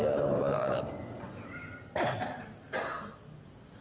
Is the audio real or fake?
real